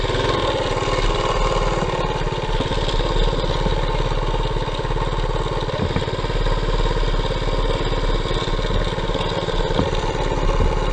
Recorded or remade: recorded